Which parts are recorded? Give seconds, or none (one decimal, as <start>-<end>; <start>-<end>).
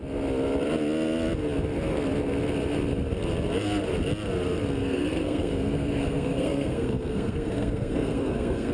0.0-4.8